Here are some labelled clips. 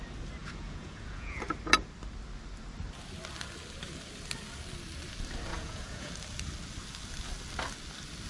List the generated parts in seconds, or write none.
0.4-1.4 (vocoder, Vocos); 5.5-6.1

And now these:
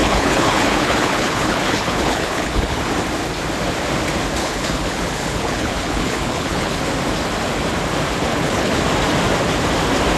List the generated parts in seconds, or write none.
0.0-2.8 (codec, HILCodec); 4.4-6.8; 8.3-8.8

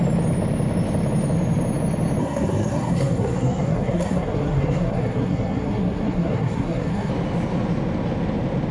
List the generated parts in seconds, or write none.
2.2-7.1 (codec, SNAC)

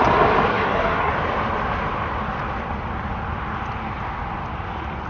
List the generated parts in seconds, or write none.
0.5-1.1 (codec, SNAC)

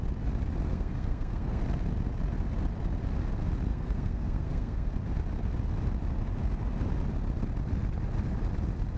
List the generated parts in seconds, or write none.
0.7-1.6 (codec, SNAC); 3.7-4.9

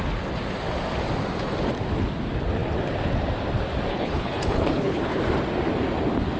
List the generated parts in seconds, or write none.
3.9-5.2 (codec, HILCodec)

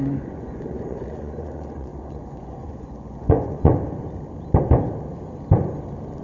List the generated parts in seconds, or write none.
0.0-3.7 (vocoder, Vocos)